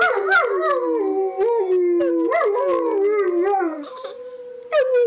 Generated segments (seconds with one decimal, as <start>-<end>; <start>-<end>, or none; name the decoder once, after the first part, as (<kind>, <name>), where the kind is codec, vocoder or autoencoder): none